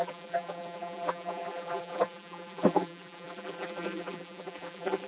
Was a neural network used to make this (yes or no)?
yes